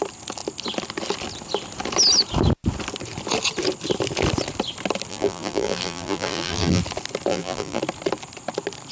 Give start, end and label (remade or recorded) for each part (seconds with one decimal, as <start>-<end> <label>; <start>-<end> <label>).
0.0-5.1 recorded; 5.1-6.8 remade; 6.8-7.3 recorded; 7.3-7.8 remade; 7.8-8.9 recorded